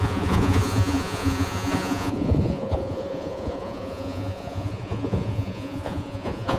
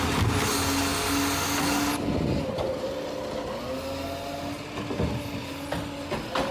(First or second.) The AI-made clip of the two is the first